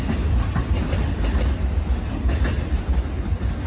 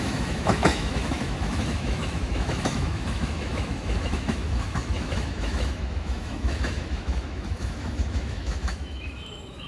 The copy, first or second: second